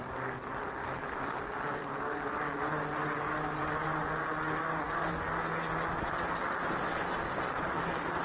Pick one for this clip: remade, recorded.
recorded